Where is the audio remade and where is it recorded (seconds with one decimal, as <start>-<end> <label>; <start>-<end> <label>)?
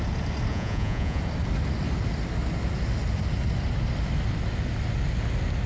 0.0-0.5 recorded; 0.5-1.2 remade; 1.2-5.7 recorded